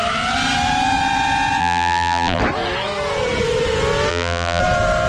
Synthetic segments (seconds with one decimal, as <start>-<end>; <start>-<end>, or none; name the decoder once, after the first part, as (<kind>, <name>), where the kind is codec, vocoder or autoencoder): 1.6-2.4 (vocoder, BigVGAN v2); 4.1-4.6